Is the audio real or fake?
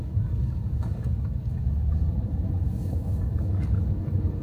fake